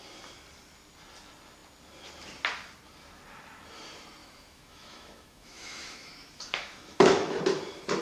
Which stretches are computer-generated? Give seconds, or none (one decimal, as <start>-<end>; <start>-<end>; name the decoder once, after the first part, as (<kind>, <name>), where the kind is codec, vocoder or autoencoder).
4.2-7.4 (autoencoder, DAC-VAE)